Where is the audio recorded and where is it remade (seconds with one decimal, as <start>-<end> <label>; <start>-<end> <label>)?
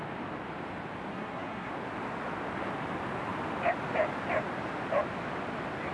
0.0-1.1 recorded; 1.1-1.7 remade; 1.7-5.9 recorded